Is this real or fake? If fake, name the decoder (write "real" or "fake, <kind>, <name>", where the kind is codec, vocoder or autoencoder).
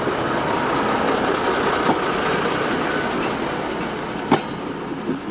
real